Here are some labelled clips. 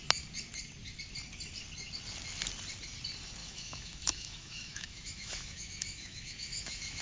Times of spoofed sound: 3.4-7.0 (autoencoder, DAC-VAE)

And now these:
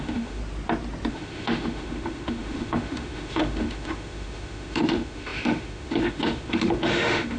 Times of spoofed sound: 0.0-0.4 (autoencoder, DAC-VAE); 1.1-7.4

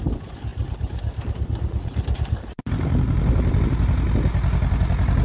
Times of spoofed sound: none